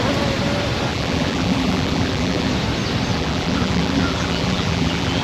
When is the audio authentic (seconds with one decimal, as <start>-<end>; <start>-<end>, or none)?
0.0-0.9; 2.5-3.1